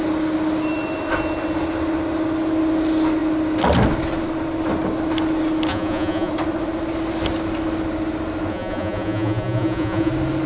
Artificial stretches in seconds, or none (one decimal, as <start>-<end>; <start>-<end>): 5.7-6.3; 8.5-10.1